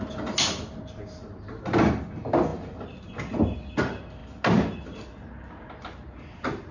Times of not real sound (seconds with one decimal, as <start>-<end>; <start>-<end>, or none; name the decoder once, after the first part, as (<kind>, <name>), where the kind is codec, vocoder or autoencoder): none

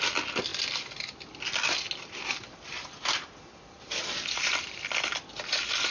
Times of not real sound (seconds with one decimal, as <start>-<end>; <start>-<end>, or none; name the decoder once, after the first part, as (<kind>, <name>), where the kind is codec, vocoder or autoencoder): none

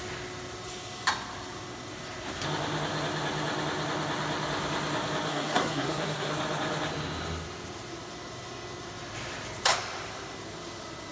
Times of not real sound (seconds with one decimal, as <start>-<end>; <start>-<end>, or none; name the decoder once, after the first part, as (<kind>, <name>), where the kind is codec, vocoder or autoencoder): 5.3-6.3 (codec, SNAC)